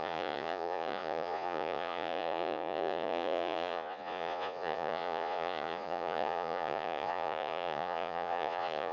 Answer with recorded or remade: remade